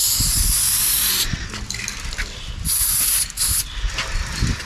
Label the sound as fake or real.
real